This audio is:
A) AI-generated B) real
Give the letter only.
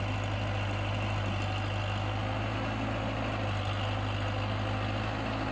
B